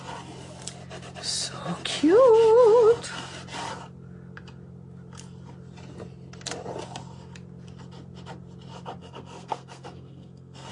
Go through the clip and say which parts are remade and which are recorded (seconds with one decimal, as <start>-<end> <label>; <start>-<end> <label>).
0.0-9.0 recorded; 9.0-10.7 remade